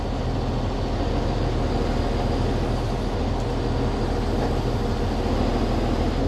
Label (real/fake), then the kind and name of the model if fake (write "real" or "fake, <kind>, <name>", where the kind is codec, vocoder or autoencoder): real